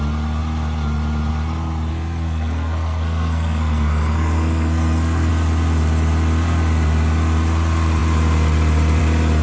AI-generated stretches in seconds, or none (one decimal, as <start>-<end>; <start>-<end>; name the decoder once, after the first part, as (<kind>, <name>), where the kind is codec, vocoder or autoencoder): 1.9-5.3 (codec, SNAC)